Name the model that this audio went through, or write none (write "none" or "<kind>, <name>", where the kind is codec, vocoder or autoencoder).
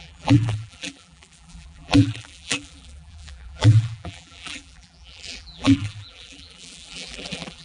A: vocoder, BigVGAN v2